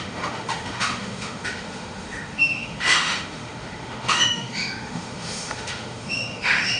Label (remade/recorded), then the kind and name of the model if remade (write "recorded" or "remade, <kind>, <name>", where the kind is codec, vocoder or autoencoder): remade, autoencoder, DAC-VAE